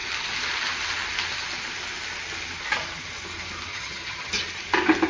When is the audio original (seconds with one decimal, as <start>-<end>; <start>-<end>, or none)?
0.0-3.7; 4.3-5.1